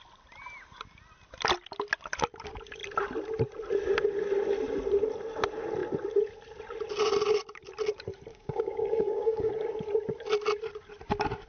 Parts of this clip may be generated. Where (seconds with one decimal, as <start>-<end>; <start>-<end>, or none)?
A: 8.3-9.5